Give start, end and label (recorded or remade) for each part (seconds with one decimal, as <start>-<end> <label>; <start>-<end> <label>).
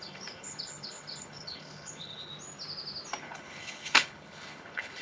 0.0-2.3 remade; 2.3-3.2 recorded; 3.2-5.0 remade